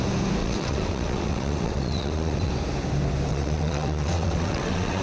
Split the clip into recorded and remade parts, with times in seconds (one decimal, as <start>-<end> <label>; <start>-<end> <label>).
0.0-0.4 recorded; 0.4-2.5 remade; 2.5-3.3 recorded; 3.3-5.0 remade

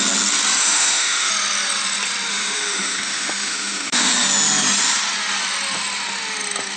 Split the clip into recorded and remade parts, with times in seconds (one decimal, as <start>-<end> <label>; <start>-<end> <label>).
0.0-0.6 recorded; 0.6-1.3 remade; 1.3-2.3 recorded; 2.3-4.1 remade; 4.1-6.8 recorded

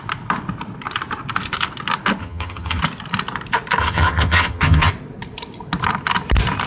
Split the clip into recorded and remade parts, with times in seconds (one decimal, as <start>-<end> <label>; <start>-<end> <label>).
0.0-2.2 recorded; 2.2-2.8 remade; 2.8-3.8 recorded; 3.8-4.9 remade; 4.9-6.7 recorded

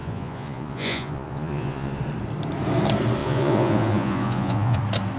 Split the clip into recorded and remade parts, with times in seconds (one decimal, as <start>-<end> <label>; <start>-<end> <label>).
0.0-2.0 remade; 2.0-3.2 recorded; 3.2-4.8 remade; 4.8-5.2 recorded

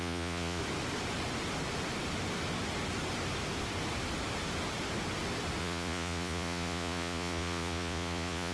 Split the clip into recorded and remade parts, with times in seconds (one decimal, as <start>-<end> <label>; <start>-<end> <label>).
0.0-0.6 remade; 0.6-5.6 recorded; 5.6-8.5 remade

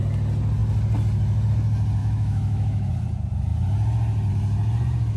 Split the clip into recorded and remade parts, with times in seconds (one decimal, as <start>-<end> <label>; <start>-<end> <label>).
0.0-2.0 recorded; 2.0-2.9 remade; 2.9-5.2 recorded

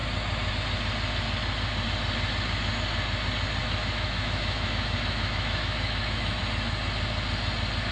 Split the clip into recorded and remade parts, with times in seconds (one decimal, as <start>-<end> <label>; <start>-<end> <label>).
0.0-3.6 recorded; 3.6-6.4 remade; 6.4-7.9 recorded